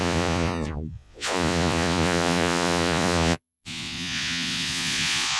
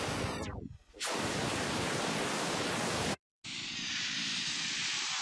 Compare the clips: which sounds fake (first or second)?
first